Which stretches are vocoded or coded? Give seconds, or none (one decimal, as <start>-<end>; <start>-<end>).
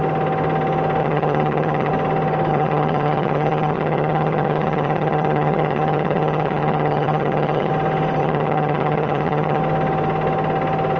1.0-1.9; 2.5-7.7; 8.2-9.6